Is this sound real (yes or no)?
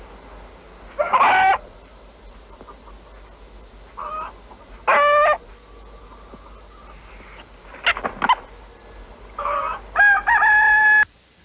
yes